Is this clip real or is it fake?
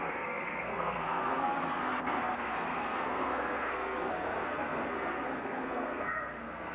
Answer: fake